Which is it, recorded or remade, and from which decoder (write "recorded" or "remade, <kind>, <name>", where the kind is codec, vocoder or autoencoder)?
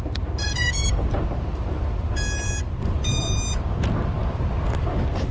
recorded